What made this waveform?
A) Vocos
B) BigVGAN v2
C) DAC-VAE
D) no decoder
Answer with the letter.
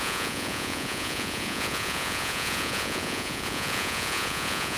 A